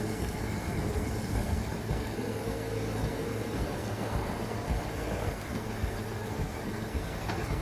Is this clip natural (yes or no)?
no